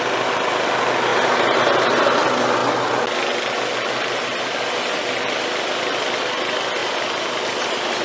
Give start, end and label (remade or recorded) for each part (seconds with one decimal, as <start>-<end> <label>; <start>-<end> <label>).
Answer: 0.0-8.0 recorded